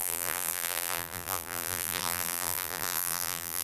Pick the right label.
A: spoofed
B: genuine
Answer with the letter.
A